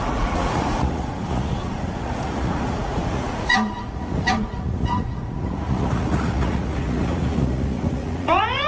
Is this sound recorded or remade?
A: remade